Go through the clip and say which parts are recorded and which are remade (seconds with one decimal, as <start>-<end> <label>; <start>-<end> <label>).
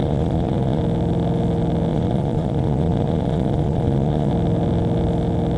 0.0-0.8 remade; 0.8-1.9 recorded; 1.9-4.3 remade; 4.3-5.6 recorded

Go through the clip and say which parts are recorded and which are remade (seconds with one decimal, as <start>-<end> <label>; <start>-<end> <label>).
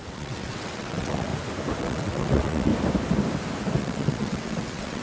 0.0-1.3 remade; 1.3-1.8 recorded; 1.8-2.7 remade; 2.7-3.8 recorded; 3.8-5.0 remade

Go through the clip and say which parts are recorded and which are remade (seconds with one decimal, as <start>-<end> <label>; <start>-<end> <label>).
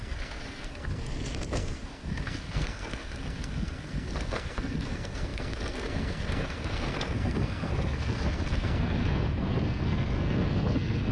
0.0-11.1 remade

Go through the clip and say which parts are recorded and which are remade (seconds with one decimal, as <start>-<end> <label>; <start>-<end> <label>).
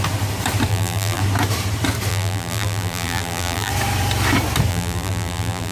0.0-0.7 recorded; 0.7-1.2 remade; 1.2-2.1 recorded; 2.1-3.7 remade; 3.7-4.7 recorded; 4.7-5.7 remade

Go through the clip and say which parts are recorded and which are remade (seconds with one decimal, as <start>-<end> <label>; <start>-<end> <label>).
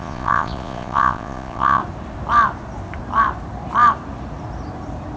0.0-1.8 remade; 1.8-5.2 recorded